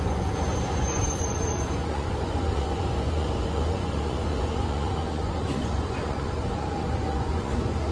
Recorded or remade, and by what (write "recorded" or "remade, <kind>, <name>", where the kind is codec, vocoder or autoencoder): remade, vocoder, Vocos